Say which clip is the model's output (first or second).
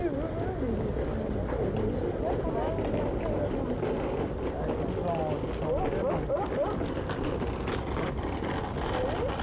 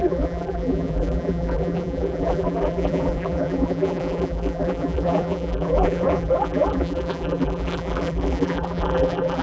second